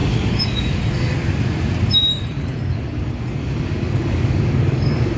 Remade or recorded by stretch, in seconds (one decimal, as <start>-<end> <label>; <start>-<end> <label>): 0.0-0.8 remade; 0.8-2.1 recorded; 2.1-5.2 remade